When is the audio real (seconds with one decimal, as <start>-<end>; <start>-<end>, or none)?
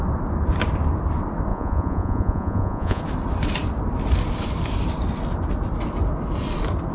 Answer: 0.0-1.5; 3.0-6.9